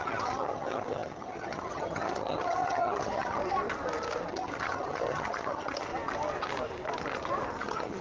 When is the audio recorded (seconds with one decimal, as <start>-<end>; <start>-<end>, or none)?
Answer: 3.4-4.3; 5.9-7.6